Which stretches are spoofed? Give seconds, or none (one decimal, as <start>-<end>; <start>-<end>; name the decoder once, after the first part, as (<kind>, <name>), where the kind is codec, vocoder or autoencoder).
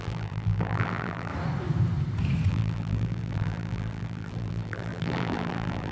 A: 0.0-1.3 (vocoder, BigVGAN v2); 2.5-5.9